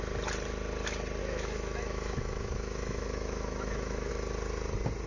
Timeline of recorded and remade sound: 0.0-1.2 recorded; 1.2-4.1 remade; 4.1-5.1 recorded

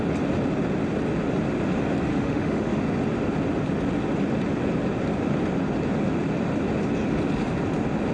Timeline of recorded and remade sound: 0.0-2.1 recorded; 2.1-2.8 remade; 2.8-8.1 recorded

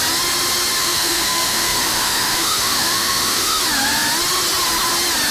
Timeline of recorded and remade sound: 0.0-0.8 recorded; 0.8-3.6 remade; 3.6-5.3 recorded

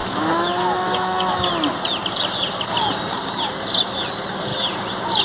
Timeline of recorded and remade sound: 0.0-1.5 remade; 1.5-5.2 recorded

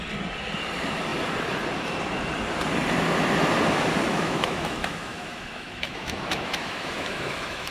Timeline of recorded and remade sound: 0.0-4.1 recorded; 4.1-7.7 remade

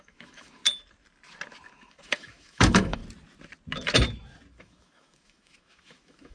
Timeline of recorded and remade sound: 0.0-0.6 remade; 0.6-1.7 recorded; 1.7-3.0 remade; 3.0-4.6 recorded; 4.6-6.3 remade